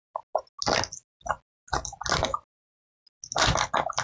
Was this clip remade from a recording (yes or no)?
no